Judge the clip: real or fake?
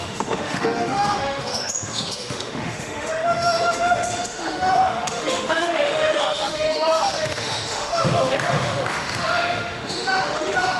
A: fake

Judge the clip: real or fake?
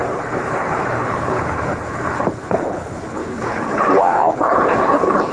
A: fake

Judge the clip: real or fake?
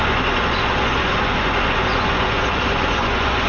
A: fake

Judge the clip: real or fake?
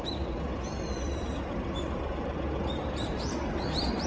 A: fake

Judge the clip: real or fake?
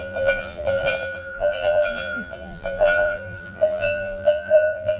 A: fake